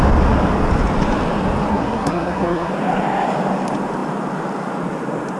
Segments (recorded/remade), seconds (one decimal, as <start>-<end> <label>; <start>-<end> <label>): 0.0-1.7 recorded; 1.7-2.7 remade; 2.7-5.4 recorded